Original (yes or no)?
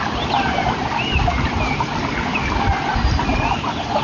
yes